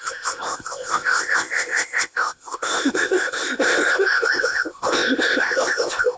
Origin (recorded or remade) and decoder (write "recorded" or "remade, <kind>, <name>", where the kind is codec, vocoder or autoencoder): remade, codec, ZipCodec